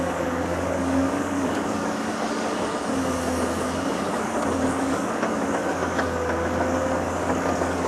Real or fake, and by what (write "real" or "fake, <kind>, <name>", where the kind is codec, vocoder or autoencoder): fake, codec, DAC